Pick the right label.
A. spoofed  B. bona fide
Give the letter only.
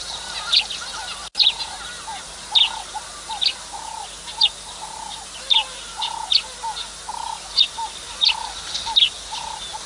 B